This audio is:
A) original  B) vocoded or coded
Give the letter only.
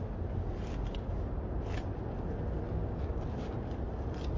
A